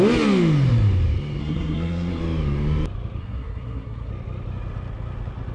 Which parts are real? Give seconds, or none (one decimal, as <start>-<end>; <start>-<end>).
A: 0.0-1.4; 2.2-3.2; 4.1-5.5

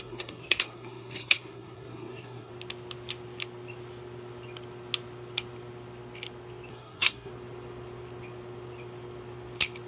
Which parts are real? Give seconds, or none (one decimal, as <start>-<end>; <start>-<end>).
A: 2.5-6.7; 7.3-9.9

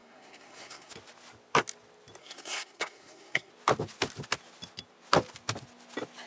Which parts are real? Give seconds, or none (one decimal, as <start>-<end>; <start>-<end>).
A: 0.9-2.2; 3.5-6.3

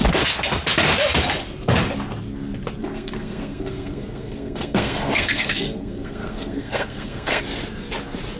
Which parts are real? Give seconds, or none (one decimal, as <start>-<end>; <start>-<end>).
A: 0.0-2.9; 7.4-8.4

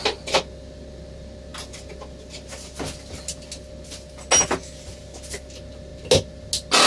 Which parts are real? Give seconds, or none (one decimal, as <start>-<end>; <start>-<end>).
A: 0.0-6.9

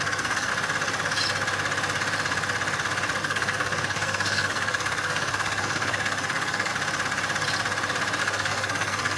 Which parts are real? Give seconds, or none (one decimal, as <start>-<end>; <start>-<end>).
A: 0.5-3.2; 6.7-8.2

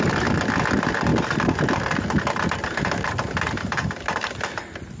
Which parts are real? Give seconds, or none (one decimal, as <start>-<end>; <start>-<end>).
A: 0.0-5.0

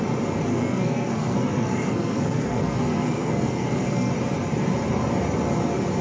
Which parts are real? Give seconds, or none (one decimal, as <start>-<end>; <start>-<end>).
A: 0.0-0.5; 4.1-6.0